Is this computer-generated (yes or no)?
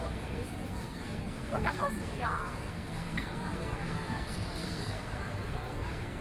yes